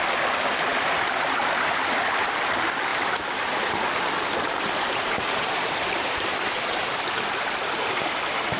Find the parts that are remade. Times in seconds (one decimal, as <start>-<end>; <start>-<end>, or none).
4.5-8.0